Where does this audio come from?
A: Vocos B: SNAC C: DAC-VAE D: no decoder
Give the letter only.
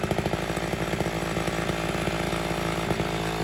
D